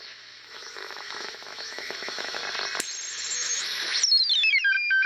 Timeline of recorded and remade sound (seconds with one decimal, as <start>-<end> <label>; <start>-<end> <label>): 0.0-2.4 remade; 2.4-3.1 recorded; 3.1-3.9 remade; 3.9-4.5 recorded; 4.5-5.1 remade